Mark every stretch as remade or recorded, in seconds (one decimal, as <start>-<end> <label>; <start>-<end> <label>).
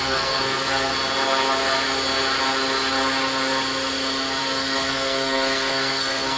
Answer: 0.0-0.9 remade; 0.9-4.4 recorded; 4.4-6.4 remade